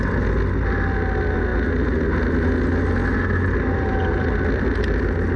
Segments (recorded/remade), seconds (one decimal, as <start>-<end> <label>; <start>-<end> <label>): 0.0-5.4 recorded